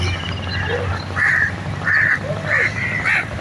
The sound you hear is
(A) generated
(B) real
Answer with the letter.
A